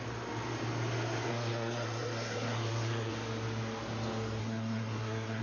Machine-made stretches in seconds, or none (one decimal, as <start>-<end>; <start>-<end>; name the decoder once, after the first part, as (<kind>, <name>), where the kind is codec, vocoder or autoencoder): 1.3-3.1 (codec, SNAC); 4.4-5.4